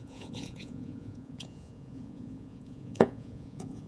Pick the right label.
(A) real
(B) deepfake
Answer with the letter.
B